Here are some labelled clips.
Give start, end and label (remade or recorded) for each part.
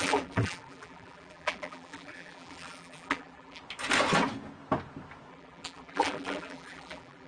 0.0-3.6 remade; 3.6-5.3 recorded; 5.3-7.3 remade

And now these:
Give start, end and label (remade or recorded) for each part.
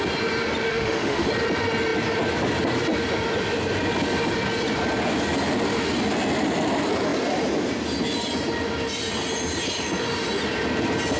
0.0-0.7 recorded; 0.7-1.3 remade; 1.3-11.2 recorded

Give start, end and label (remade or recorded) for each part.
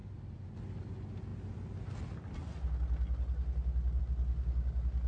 0.0-5.1 recorded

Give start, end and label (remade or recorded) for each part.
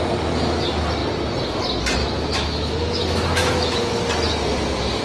0.0-2.0 recorded; 2.0-4.0 remade; 4.0-5.0 recorded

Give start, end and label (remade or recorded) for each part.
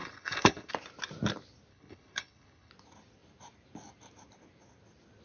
0.0-0.7 remade; 0.7-1.7 recorded; 1.7-2.7 remade; 2.7-5.2 recorded